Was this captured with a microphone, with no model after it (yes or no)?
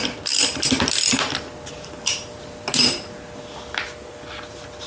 yes